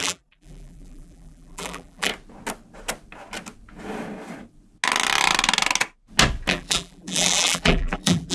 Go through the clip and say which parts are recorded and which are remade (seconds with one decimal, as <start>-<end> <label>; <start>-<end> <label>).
0.0-2.1 remade; 2.1-6.5 recorded; 6.5-8.3 remade